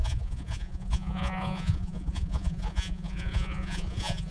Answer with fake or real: fake